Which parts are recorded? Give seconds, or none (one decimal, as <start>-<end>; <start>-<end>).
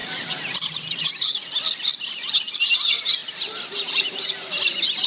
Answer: 1.1-5.1